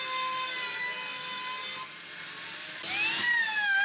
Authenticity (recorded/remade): recorded